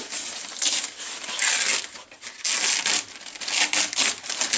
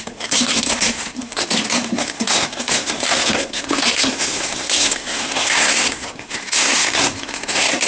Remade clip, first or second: second